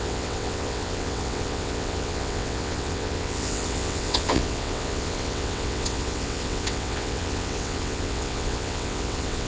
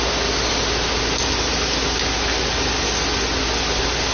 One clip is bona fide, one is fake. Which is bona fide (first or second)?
second